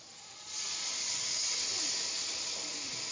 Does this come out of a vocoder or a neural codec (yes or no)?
no